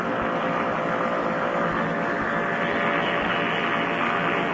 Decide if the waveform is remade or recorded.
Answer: recorded